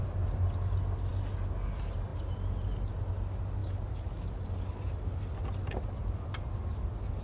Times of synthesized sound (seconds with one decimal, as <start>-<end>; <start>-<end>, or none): none